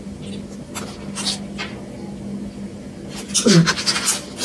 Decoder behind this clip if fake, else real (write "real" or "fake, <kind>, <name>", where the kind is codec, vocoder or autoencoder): real